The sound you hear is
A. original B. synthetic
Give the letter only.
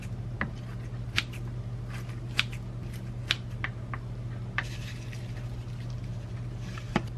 B